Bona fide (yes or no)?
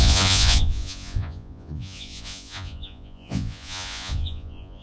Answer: no